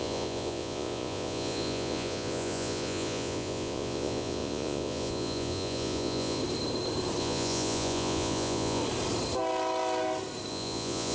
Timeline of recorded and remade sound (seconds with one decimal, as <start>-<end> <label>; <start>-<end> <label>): 0.0-6.4 remade; 6.4-7.2 recorded; 7.2-8.8 remade; 8.8-10.5 recorded; 10.5-11.1 remade